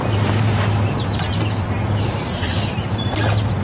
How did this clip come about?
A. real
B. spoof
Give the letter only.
B